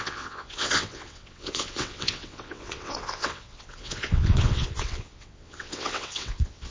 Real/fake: fake